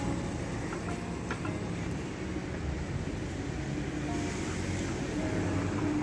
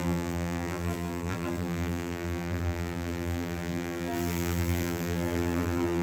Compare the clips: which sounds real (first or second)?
first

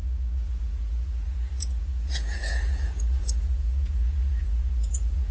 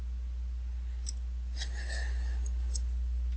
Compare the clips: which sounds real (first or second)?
second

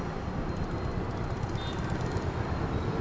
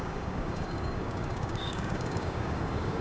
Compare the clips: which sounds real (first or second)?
first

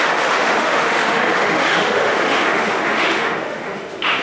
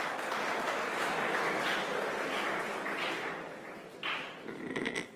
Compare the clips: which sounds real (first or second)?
second